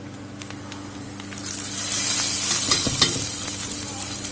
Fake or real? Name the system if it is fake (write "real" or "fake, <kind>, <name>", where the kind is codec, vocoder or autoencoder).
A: real